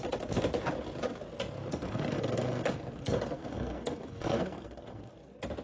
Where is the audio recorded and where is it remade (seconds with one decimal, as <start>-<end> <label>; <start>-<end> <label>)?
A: 0.0-1.7 recorded; 1.7-5.1 remade; 5.1-5.6 recorded